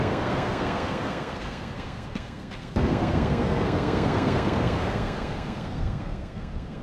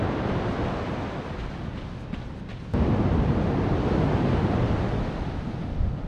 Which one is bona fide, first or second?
second